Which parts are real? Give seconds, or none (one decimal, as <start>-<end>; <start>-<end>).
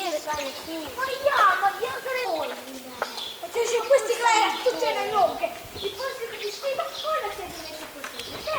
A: 0.0-8.6